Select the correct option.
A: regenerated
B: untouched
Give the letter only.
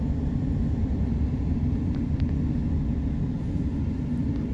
B